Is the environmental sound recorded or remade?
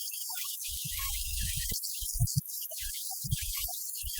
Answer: remade